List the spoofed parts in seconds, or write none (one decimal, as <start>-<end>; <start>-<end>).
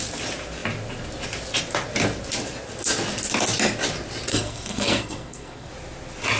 4.3-5.7